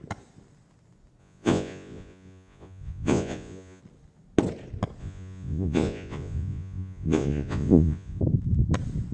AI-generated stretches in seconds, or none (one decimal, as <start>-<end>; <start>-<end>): 1.2-3.8; 5.0-8.2